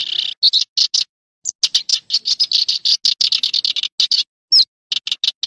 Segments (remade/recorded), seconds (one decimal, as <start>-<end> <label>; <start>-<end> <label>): 0.0-5.5 recorded